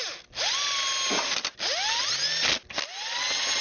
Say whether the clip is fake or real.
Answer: real